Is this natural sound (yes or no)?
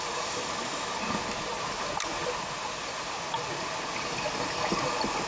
yes